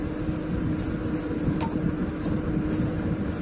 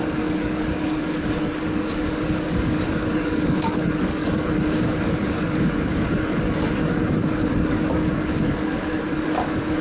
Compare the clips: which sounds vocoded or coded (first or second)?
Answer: second